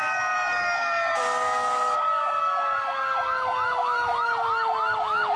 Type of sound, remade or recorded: remade